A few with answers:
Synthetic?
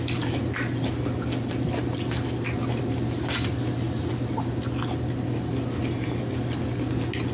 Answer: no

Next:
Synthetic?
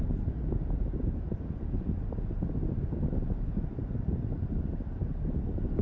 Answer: yes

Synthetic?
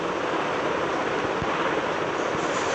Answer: no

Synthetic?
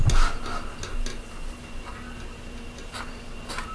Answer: no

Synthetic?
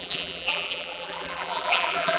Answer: yes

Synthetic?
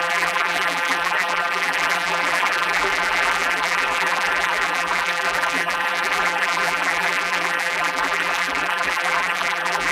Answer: yes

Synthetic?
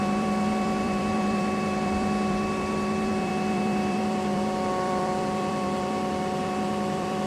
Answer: yes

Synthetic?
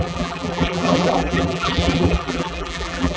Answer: yes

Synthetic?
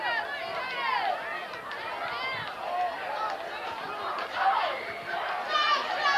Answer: no